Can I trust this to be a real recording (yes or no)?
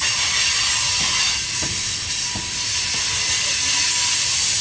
yes